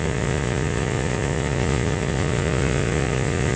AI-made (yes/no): yes